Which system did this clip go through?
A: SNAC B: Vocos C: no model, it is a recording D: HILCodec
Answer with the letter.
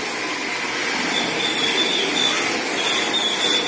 C